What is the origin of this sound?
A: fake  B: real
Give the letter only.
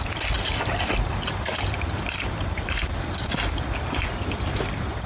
B